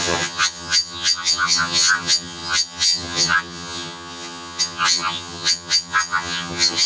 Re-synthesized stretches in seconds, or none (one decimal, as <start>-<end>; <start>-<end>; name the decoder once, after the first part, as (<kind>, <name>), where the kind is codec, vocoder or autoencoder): 0.0-6.9 (vocoder, HiFi-GAN)